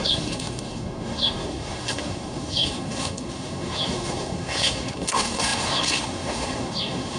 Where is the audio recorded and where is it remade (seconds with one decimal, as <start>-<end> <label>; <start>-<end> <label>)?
0.0-7.2 remade